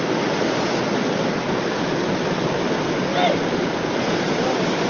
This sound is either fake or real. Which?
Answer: real